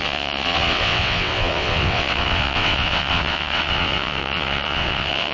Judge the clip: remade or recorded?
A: remade